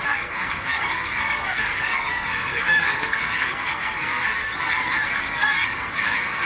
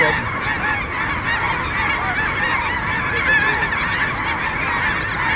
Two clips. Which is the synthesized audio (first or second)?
first